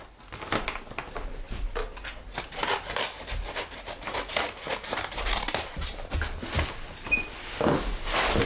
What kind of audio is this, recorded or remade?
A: recorded